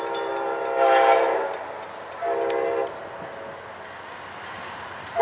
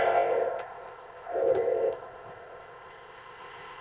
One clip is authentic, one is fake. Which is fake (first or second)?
second